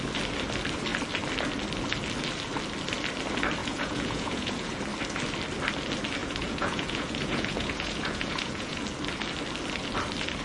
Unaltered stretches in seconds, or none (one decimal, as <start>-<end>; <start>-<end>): 0.0-3.6; 4.8-6.2; 8.8-10.4